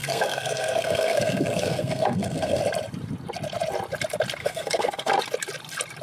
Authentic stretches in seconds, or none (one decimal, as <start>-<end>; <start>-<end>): 2.6-4.4; 5.1-6.0